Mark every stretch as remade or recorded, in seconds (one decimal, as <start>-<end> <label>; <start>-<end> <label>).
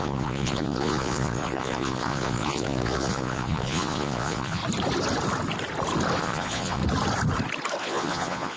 0.0-4.6 remade; 4.6-6.2 recorded; 6.2-6.8 remade; 6.8-7.8 recorded; 7.8-8.6 remade